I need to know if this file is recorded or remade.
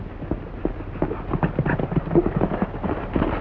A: recorded